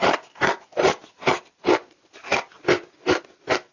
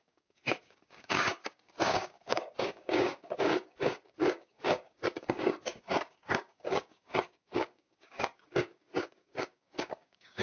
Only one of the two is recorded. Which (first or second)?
first